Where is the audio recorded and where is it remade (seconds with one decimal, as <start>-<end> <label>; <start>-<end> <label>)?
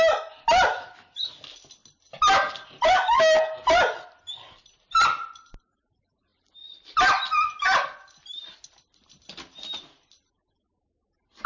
0.0-11.5 recorded